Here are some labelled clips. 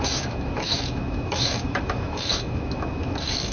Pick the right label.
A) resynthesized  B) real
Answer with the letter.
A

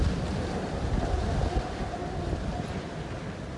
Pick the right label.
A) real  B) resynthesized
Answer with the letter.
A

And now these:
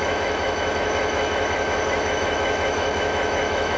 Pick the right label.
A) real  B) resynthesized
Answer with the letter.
B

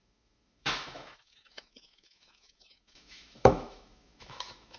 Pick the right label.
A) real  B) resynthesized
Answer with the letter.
B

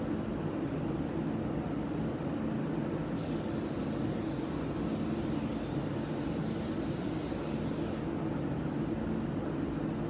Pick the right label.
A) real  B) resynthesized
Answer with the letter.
A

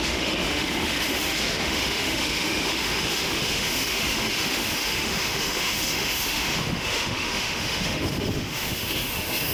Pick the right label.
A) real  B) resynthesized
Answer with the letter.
B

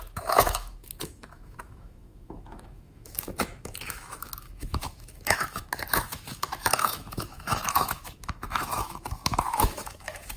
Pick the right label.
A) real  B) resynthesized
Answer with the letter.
B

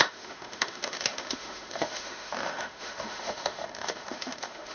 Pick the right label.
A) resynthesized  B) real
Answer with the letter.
A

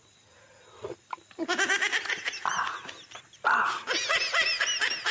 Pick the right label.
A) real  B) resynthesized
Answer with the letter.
A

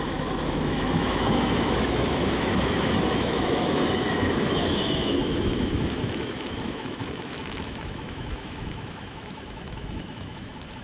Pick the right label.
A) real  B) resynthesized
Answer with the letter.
B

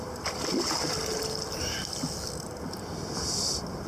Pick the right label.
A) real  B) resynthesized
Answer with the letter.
A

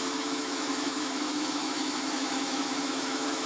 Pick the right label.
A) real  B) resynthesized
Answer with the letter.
B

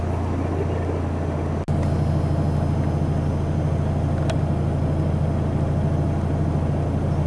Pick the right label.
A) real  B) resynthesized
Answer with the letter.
A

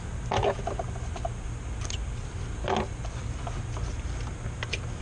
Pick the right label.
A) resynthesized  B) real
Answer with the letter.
B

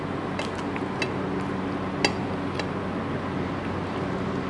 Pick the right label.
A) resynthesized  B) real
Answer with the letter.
B